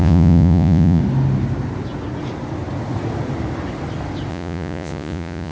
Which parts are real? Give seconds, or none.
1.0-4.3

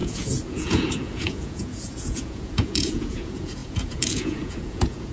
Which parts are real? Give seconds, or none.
none

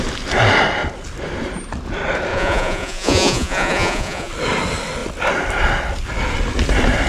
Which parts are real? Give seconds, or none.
0.0-2.3; 4.3-7.1

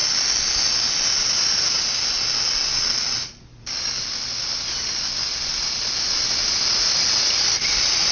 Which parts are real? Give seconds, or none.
0.0-8.1